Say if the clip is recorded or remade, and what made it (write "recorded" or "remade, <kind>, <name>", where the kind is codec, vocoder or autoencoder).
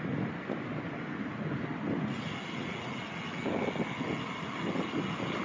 recorded